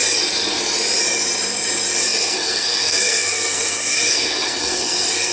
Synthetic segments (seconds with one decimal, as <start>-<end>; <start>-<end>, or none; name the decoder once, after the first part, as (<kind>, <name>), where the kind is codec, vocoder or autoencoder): 2.0-5.3 (codec, SNAC)